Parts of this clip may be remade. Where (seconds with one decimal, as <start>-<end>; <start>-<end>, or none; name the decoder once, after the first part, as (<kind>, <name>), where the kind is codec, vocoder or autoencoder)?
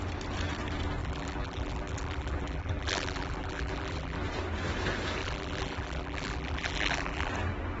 1.0-4.2 (vocoder, BigVGAN v2); 5.2-7.3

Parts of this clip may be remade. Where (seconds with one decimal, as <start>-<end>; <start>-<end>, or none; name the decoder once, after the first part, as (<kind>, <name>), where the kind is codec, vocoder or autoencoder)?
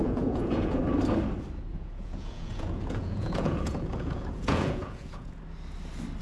0.0-0.8 (vocoder, Vocos); 1.7-5.4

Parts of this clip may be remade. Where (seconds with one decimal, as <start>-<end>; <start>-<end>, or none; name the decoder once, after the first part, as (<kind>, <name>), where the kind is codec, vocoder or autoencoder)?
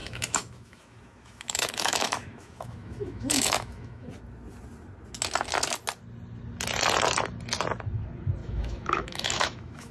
0.0-4.1 (autoencoder, DAC-VAE); 8.4-9.9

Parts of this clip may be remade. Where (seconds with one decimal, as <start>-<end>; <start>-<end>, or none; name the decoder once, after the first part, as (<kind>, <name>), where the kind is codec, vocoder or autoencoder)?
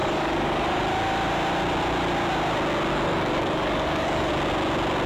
0.0-0.8 (codec, DAC); 2.9-4.3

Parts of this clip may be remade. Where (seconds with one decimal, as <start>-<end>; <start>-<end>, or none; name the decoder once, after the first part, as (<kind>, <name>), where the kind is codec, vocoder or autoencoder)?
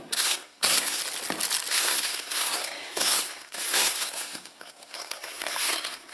0.0-1.0 (codec, SNAC); 1.7-6.1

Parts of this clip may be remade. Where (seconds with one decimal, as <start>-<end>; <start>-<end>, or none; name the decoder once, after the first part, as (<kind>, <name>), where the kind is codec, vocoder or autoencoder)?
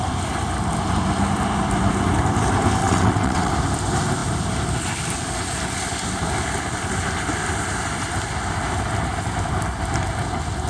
2.8-3.5 (vocoder, WaveNeXt)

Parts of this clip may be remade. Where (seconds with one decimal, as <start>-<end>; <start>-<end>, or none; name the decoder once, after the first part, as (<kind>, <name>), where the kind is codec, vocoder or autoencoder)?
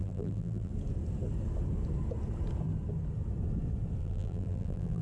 0.0-0.7 (vocoder, BigVGAN v2); 4.0-5.0